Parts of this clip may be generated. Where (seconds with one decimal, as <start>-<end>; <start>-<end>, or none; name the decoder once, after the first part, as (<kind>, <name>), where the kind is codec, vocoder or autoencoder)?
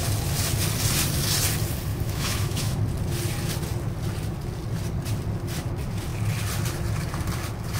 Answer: 1.9-2.8 (autoencoder, DAC-VAE)